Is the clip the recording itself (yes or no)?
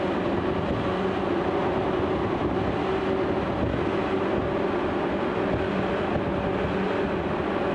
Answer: yes